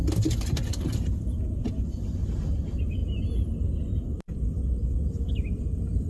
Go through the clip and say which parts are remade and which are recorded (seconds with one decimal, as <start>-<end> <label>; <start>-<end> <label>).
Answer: 0.0-6.1 recorded